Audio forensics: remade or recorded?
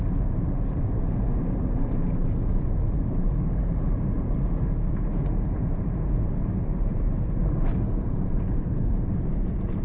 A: remade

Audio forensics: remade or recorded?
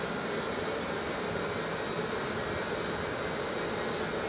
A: recorded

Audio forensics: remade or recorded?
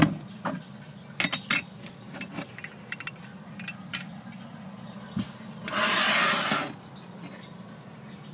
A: recorded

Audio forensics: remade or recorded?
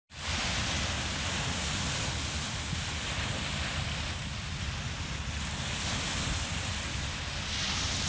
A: recorded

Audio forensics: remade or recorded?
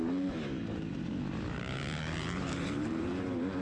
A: remade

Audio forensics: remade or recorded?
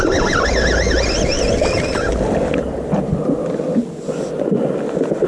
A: recorded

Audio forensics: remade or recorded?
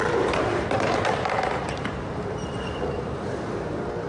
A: remade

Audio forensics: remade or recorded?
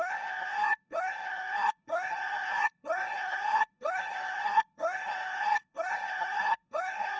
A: remade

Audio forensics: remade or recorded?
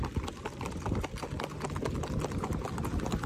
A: recorded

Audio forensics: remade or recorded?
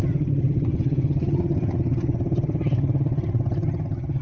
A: remade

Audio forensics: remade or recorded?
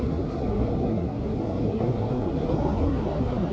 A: remade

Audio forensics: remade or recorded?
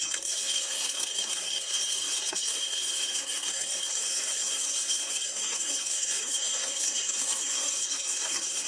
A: remade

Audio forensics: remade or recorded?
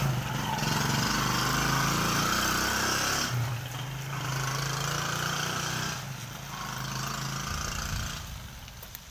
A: recorded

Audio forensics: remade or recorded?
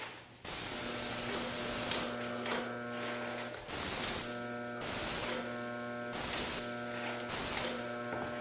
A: recorded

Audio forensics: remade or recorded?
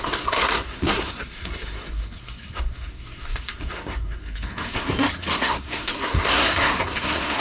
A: remade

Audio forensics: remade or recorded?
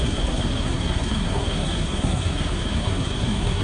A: remade